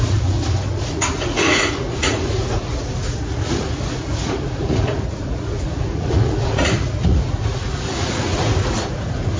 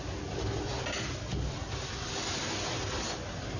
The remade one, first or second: first